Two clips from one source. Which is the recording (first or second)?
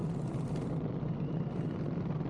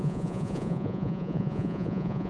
first